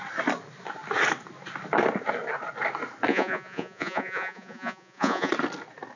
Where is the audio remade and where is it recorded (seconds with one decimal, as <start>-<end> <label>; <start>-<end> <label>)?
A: 0.0-3.1 recorded; 3.1-5.3 remade; 5.3-6.0 recorded